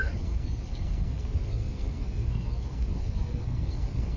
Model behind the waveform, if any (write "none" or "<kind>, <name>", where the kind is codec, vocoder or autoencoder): codec, SNAC